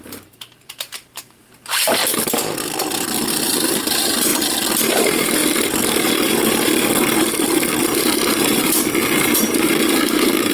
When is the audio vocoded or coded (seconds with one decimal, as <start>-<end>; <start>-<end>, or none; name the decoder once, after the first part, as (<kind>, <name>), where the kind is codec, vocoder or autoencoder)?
0.0-2.0 (vocoder, BigVGAN v2); 3.3-4.3; 4.9-5.4; 8.3-10.5